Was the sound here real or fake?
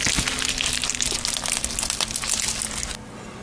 real